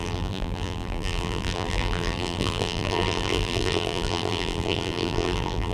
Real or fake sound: fake